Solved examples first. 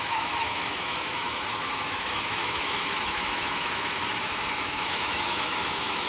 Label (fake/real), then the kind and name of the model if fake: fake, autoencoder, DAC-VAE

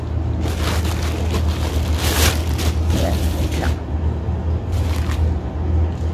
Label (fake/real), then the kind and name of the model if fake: real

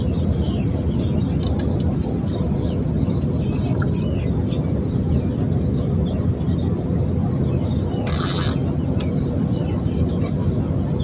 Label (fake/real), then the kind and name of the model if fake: real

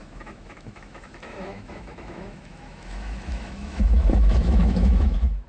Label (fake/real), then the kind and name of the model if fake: fake, autoencoder, DAC-VAE